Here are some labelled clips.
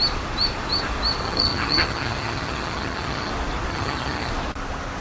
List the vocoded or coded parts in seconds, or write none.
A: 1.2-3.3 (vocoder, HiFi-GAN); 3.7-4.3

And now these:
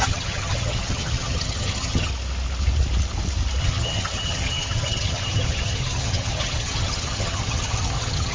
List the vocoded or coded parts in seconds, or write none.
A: 0.0-2.1 (vocoder, HiFi-GAN); 3.6-8.3

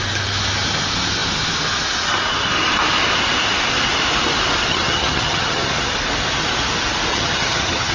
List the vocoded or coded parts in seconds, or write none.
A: 4.7-5.7 (vocoder, HiFi-GAN); 7.1-7.9

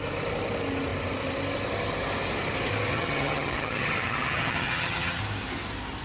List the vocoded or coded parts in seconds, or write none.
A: 2.9-5.2 (vocoder, HiFi-GAN)

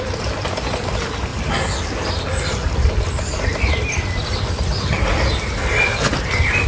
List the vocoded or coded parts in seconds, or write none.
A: none

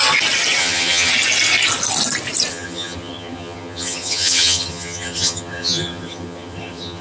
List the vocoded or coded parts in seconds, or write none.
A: 0.6-1.1 (vocoder, HiFi-GAN); 2.5-7.0